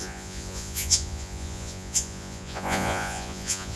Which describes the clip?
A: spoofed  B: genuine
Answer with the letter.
A